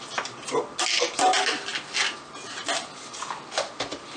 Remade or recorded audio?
recorded